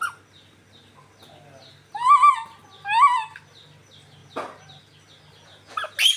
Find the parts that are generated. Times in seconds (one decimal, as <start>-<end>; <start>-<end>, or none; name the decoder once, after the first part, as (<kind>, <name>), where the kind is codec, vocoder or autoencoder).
4.2-4.8 (vocoder, BigVGAN v2)